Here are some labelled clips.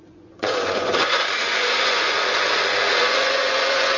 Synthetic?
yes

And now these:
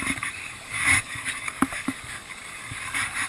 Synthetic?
yes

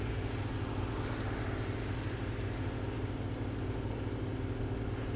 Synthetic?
no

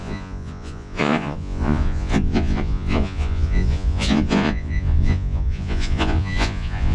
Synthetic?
yes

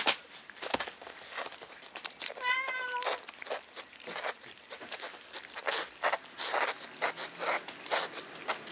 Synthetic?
no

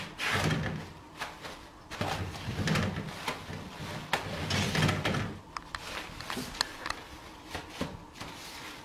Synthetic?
no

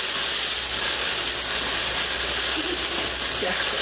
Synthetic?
no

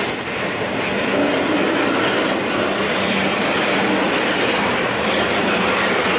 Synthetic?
no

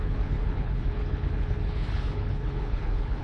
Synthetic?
yes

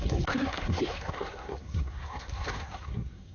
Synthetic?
yes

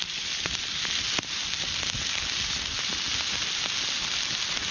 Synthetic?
no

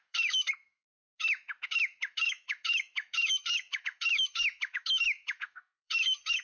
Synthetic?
yes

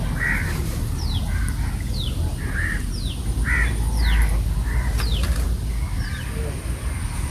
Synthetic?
no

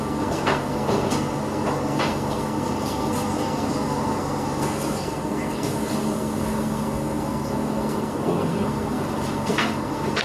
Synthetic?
yes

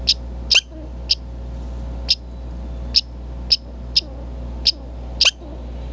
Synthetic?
no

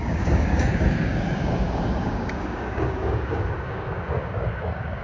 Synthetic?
yes